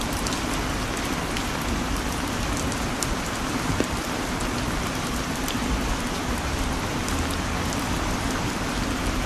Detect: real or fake real